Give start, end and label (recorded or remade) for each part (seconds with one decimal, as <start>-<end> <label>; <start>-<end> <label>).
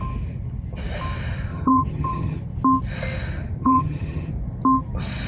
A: 0.0-1.5 recorded; 1.5-2.4 remade; 2.4-3.6 recorded; 3.6-4.3 remade; 4.3-5.3 recorded